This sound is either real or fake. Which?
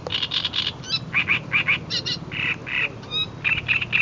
real